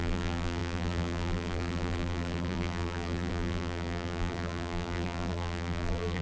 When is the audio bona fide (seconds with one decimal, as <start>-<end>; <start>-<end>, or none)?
none